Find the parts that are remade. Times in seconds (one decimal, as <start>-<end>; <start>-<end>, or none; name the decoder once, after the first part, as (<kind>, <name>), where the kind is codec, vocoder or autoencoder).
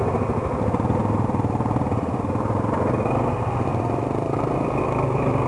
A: 1.0-2.2 (vocoder, BigVGAN v2); 3.7-4.8